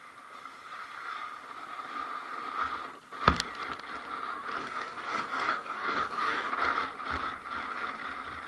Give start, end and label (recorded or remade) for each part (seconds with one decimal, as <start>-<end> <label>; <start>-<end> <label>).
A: 0.0-4.6 recorded; 4.6-6.5 remade; 6.5-8.5 recorded

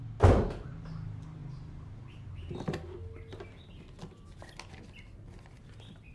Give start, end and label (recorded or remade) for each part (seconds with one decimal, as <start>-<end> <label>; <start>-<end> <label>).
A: 0.0-6.1 recorded

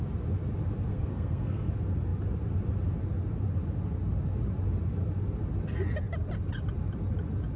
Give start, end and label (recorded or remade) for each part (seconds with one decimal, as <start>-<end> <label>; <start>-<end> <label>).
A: 0.0-0.9 recorded; 0.9-1.7 remade; 1.7-7.6 recorded

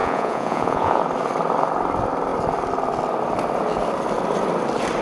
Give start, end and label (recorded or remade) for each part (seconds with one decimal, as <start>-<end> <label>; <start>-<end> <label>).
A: 0.0-1.0 remade; 1.0-5.0 recorded

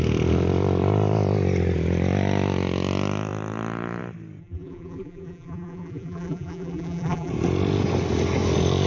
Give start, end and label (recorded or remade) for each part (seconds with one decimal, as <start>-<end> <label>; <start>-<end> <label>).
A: 0.0-4.4 recorded; 4.4-7.3 remade; 7.3-8.9 recorded